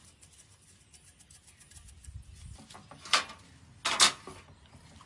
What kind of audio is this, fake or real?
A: real